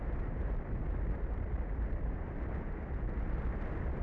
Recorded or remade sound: recorded